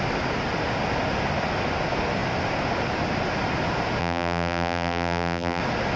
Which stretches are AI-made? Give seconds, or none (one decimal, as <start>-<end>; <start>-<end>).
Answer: 4.0-5.6